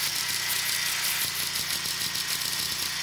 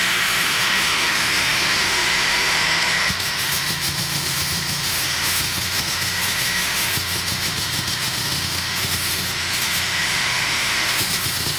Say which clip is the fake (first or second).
second